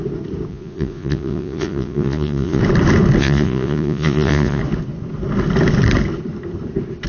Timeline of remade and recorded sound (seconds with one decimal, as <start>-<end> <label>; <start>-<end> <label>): 0.0-0.5 recorded; 0.5-2.6 remade; 2.6-3.2 recorded; 3.2-4.6 remade; 4.6-7.1 recorded

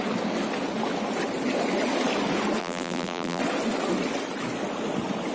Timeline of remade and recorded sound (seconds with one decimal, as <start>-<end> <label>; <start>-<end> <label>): 0.0-2.6 recorded; 2.6-3.4 remade; 3.4-5.3 recorded

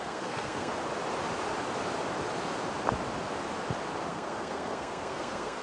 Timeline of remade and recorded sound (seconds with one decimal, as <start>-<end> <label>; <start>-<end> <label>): 0.0-0.7 remade; 0.7-4.1 recorded; 4.1-5.6 remade

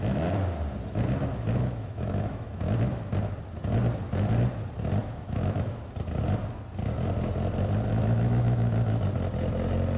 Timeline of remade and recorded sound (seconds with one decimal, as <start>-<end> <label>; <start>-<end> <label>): 0.0-1.3 recorded; 1.3-3.0 remade; 3.0-5.0 recorded; 5.0-5.9 remade; 5.9-7.9 recorded; 7.9-9.0 remade; 9.0-10.0 recorded

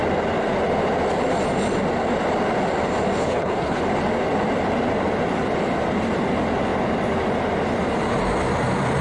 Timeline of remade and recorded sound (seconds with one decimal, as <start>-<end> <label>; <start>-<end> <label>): 0.0-3.2 recorded; 3.2-3.8 remade; 3.8-9.0 recorded